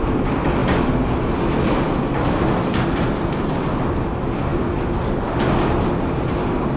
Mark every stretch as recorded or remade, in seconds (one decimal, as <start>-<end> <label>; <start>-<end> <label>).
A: 0.0-6.8 recorded